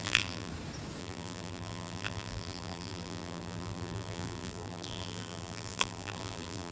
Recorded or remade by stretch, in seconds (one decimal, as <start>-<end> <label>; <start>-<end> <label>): 0.0-0.5 remade; 0.5-1.0 recorded; 1.0-6.7 remade